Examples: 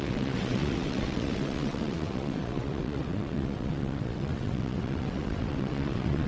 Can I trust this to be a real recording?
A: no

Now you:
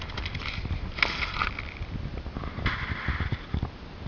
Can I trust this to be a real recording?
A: yes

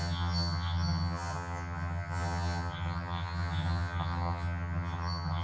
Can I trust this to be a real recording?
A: no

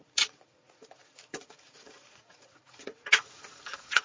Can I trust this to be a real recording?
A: no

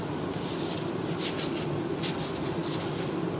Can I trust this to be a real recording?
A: yes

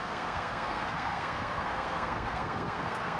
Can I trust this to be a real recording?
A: no